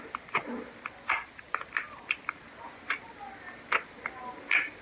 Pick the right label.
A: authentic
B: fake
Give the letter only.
A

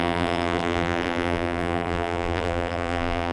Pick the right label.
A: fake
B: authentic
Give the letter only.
A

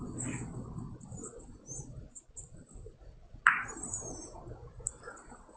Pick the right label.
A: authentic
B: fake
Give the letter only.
A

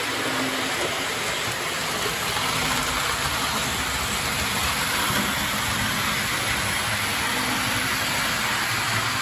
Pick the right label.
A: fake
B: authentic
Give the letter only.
B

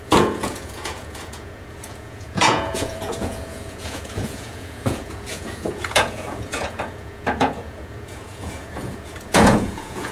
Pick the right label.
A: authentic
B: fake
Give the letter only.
B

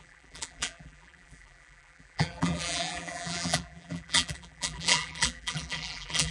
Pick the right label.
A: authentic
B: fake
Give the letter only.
B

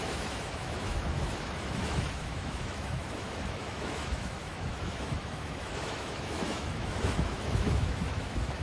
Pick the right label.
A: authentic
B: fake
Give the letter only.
B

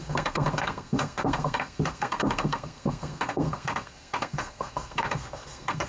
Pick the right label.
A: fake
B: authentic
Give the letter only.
A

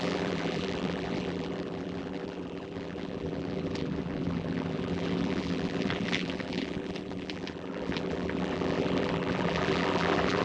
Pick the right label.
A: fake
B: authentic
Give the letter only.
A